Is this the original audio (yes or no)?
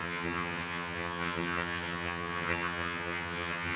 no